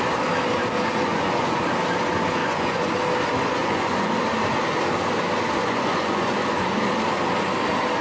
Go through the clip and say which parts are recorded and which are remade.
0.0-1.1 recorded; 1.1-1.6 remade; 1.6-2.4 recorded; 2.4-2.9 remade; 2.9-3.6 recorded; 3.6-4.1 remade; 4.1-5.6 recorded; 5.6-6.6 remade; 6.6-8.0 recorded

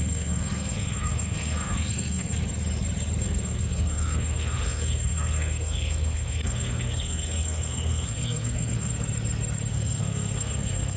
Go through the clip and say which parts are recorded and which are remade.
0.0-2.4 remade; 2.4-3.2 recorded; 3.2-8.9 remade; 8.9-9.7 recorded; 9.7-11.0 remade

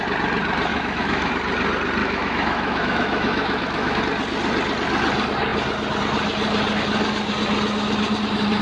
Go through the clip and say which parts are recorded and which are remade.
0.0-0.7 recorded; 0.7-1.3 remade; 1.3-2.0 recorded; 2.0-4.0 remade; 4.0-8.6 recorded

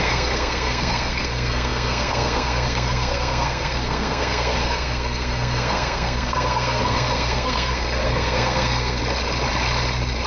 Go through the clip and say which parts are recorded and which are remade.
0.0-9.0 remade; 9.0-10.3 recorded

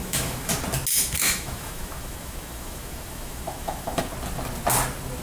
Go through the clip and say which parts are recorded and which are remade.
0.0-0.5 remade; 0.5-0.9 recorded; 0.9-4.0 remade; 4.0-5.2 recorded

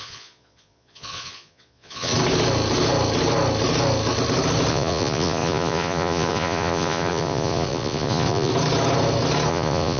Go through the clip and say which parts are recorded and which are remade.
0.0-2.1 remade; 2.1-4.7 recorded; 4.7-8.5 remade; 8.5-9.5 recorded; 9.5-10.0 remade